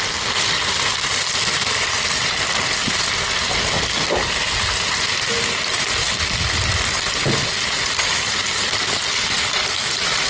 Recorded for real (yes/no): yes